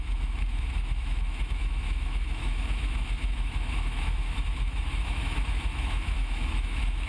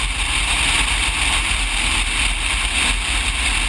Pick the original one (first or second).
second